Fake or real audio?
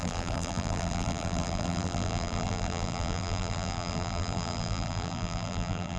fake